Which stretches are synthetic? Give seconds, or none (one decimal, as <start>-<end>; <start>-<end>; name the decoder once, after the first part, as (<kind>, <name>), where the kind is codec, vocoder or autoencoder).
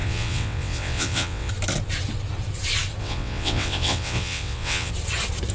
0.0-1.5 (vocoder, WaveNeXt); 3.0-4.9